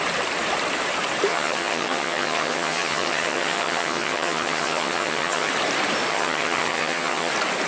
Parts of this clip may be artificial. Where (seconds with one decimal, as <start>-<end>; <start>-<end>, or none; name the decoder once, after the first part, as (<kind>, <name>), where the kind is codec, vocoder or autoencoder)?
1.3-5.5 (vocoder, HiFi-GAN); 6.1-7.3